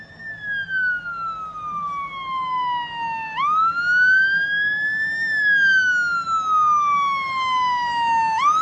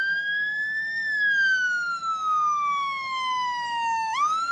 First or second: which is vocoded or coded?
second